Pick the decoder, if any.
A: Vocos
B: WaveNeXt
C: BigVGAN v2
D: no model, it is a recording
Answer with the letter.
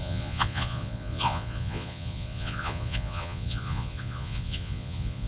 A